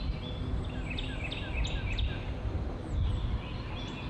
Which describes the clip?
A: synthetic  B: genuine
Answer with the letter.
B